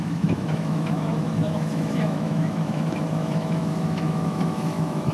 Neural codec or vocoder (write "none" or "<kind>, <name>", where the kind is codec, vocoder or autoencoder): autoencoder, DAC-VAE